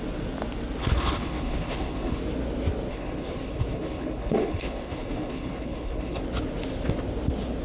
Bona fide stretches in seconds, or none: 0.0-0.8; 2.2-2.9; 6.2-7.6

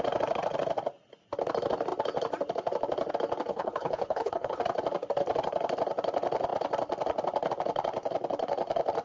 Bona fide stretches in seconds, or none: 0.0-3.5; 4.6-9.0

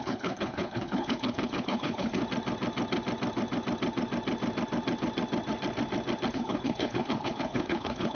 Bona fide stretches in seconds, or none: 2.2-6.3

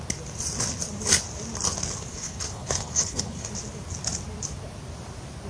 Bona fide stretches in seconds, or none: 0.0-2.1; 3.5-5.5